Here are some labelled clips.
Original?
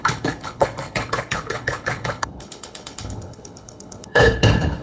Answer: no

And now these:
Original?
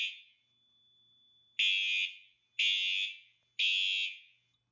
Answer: yes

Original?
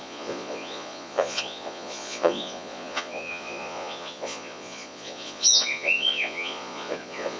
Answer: no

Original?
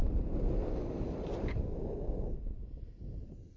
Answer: yes